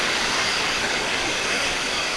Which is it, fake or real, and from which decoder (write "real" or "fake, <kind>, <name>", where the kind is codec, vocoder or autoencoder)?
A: fake, codec, DAC